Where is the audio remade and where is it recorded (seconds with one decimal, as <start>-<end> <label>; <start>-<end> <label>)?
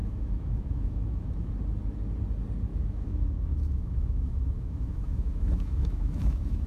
0.0-1.5 remade; 1.5-2.7 recorded; 2.7-6.7 remade